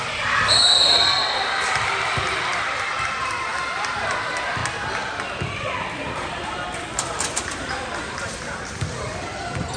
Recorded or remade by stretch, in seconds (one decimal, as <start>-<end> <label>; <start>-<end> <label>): 0.0-4.6 remade; 4.6-5.6 recorded; 5.6-9.8 remade